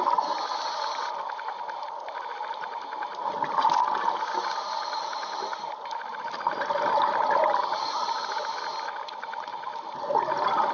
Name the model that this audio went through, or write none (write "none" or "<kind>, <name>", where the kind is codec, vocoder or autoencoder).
none